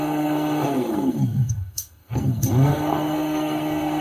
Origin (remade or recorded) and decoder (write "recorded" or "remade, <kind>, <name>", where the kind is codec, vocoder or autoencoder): remade, codec, SNAC